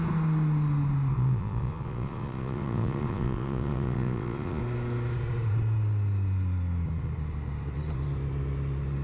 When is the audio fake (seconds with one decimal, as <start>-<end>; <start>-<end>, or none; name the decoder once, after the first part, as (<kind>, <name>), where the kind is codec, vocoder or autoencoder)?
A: 1.1-4.6 (vocoder, Vocos)